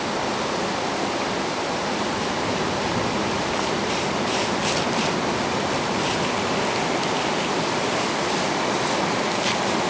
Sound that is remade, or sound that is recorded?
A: recorded